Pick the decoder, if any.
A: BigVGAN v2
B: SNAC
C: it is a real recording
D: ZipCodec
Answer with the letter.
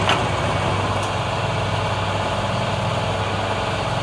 C